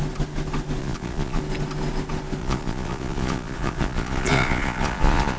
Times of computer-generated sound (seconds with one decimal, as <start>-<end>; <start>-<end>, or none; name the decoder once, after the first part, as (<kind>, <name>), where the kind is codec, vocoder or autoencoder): 0.8-1.4 (vocoder, Vocos); 2.4-5.4